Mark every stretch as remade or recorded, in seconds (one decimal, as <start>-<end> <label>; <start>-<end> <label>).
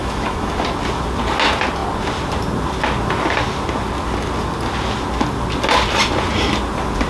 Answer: 0.0-0.5 remade; 0.5-7.1 recorded